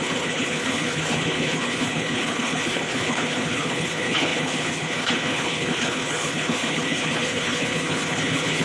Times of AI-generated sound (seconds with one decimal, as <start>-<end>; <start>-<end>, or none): 0.0-8.6